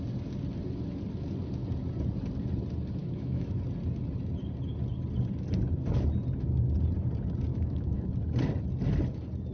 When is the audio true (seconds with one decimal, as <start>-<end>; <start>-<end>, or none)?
0.0-3.0; 3.6-7.5; 8.1-9.5